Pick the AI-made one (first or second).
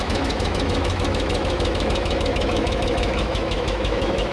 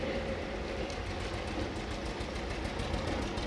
first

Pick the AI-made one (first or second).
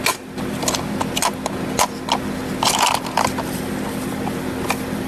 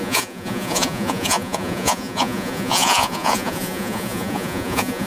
second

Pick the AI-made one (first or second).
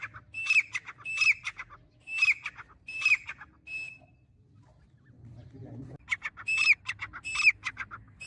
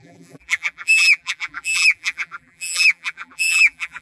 second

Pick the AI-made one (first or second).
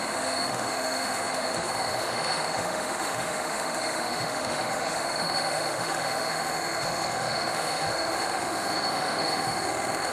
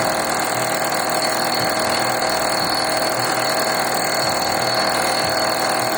first